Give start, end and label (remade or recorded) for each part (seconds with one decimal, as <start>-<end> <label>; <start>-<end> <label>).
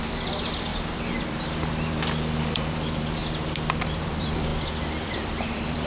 0.0-3.2 remade; 3.2-3.8 recorded; 3.8-5.9 remade